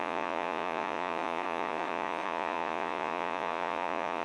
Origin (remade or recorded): remade